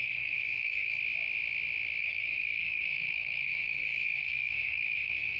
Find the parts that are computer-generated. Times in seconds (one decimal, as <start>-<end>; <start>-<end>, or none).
0.0-1.0; 2.0-5.4